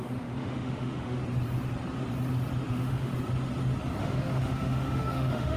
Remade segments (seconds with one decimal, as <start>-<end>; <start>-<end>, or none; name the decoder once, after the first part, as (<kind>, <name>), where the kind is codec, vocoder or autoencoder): 0.0-1.2 (autoencoder, DAC-VAE); 2.7-3.1; 4.0-5.6